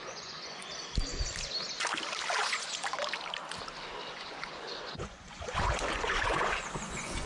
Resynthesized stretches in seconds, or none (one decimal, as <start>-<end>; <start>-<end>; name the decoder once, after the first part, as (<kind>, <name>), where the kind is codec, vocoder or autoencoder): 0.0-0.7 (vocoder, Vocos); 2.4-2.9; 4.1-7.3